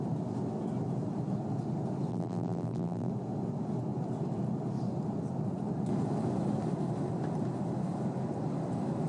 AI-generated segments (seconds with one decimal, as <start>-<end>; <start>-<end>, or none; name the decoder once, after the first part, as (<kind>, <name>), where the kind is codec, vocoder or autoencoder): 2.1-3.1 (vocoder, BigVGAN v2)